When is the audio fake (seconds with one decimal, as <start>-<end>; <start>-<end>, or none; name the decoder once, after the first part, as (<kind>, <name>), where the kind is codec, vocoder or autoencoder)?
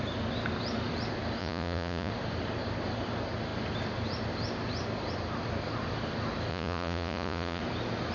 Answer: 1.4-2.1 (vocoder, Vocos); 6.5-7.6